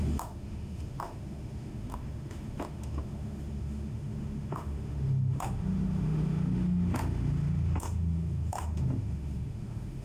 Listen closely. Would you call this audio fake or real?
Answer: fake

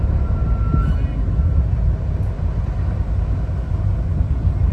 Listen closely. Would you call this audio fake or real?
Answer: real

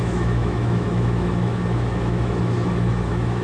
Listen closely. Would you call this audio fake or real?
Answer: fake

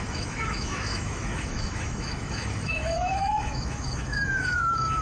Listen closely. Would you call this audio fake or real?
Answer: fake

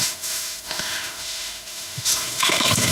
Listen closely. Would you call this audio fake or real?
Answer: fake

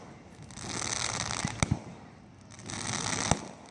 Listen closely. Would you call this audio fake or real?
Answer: real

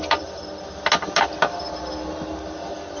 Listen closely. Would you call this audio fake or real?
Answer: real